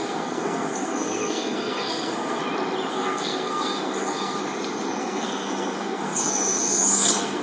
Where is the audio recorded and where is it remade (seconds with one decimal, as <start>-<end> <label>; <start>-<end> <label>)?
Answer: 0.0-2.4 remade; 2.4-2.9 recorded; 2.9-4.4 remade; 4.4-5.0 recorded; 5.0-7.4 remade

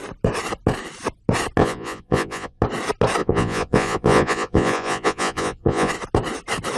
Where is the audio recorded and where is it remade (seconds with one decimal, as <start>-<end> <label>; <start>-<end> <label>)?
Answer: 0.0-1.6 recorded; 1.6-2.6 remade; 2.6-3.2 recorded; 3.2-5.9 remade; 5.9-6.8 recorded